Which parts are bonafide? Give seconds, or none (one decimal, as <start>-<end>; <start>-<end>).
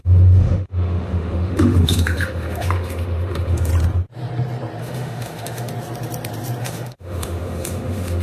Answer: 3.7-4.8; 5.7-6.6